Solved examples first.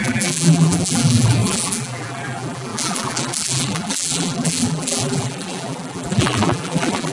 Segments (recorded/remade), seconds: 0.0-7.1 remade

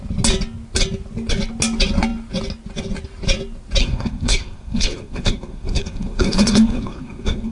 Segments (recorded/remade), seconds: 0.0-3.8 recorded; 3.8-7.5 remade

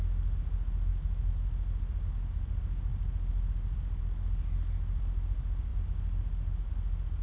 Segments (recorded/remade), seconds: 0.0-7.2 recorded

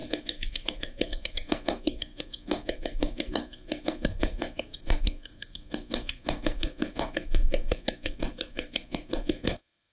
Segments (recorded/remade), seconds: 0.0-9.9 remade

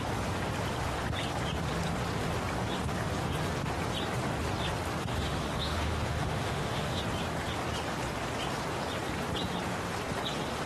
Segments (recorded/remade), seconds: 0.0-5.0 recorded; 5.0-7.0 remade; 7.0-10.7 recorded

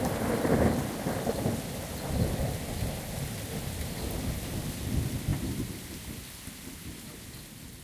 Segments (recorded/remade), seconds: 0.0-7.8 recorded